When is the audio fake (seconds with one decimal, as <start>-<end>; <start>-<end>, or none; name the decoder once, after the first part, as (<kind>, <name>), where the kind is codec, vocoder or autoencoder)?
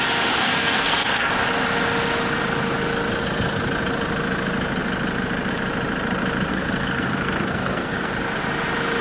0.4-1.3 (codec, SNAC); 6.5-8.1